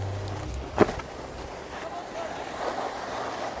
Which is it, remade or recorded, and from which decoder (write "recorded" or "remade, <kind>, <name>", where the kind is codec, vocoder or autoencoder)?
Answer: recorded